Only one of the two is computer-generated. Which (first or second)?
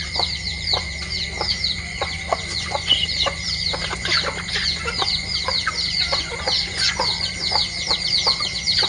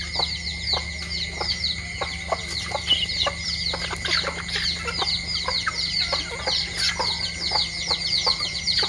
first